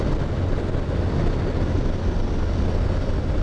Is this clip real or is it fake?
real